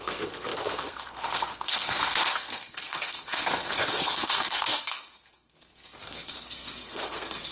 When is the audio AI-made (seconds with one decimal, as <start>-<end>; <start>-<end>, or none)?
0.0-7.5